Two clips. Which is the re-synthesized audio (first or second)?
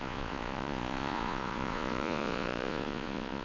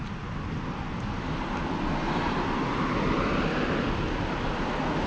first